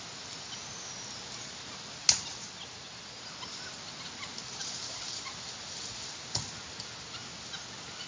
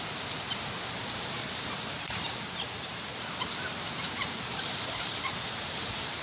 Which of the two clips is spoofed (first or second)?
second